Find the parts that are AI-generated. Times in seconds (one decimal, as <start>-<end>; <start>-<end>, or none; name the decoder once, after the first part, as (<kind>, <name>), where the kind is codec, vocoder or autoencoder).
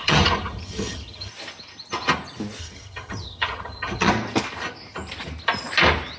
0.0-1.3 (vocoder, HiFi-GAN); 2.6-4.1